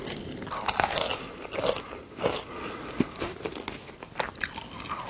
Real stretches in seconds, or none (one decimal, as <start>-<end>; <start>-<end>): 0.0-1.1; 2.0-5.1